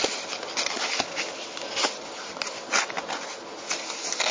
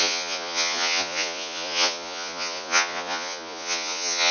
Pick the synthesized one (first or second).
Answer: second